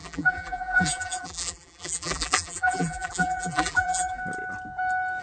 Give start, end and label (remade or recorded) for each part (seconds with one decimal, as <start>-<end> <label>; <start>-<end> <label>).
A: 0.0-4.2 remade; 4.2-5.2 recorded